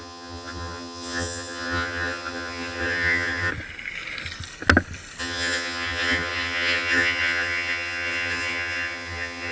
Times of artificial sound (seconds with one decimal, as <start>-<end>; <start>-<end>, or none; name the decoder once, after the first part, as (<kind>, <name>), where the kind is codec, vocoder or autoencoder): 0.0-3.5 (vocoder, HiFi-GAN); 5.2-9.5